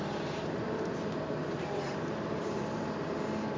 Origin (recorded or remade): remade